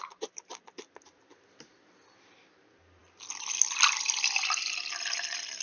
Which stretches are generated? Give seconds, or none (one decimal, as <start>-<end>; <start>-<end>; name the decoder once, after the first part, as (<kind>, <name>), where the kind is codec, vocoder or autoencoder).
none